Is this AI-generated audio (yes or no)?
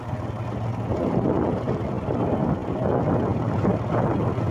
no